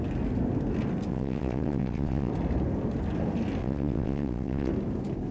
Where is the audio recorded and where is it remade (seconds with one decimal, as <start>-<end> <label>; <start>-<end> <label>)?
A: 0.0-1.1 recorded; 1.1-2.3 remade; 2.3-3.6 recorded; 3.6-4.7 remade; 4.7-5.3 recorded